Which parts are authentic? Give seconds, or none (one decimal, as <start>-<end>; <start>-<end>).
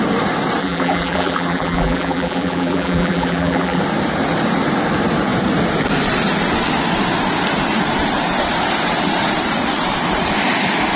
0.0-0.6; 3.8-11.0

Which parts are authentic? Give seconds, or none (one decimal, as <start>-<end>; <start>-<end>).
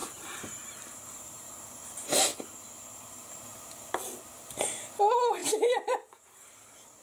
1.5-5.4; 6.5-7.0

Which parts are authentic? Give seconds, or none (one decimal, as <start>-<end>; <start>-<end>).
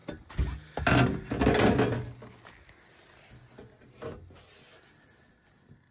0.0-5.9